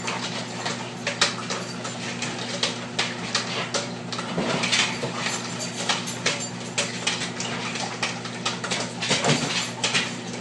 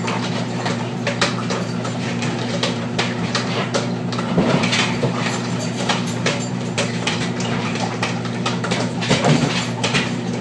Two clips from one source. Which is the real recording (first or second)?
first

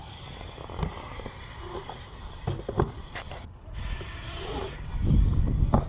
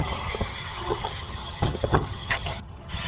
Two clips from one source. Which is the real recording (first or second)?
first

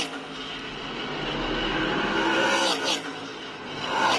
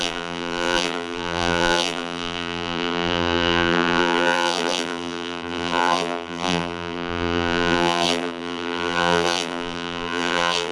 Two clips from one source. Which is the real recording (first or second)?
first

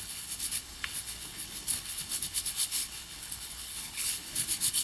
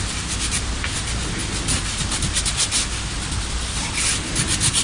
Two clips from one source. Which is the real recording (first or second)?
second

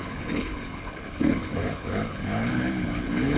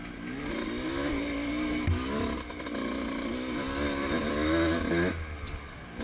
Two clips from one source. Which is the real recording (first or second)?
second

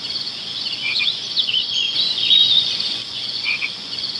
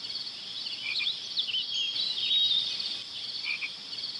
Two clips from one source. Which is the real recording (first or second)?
second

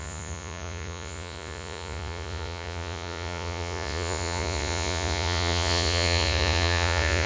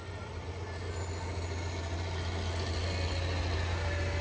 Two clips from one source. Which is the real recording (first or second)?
second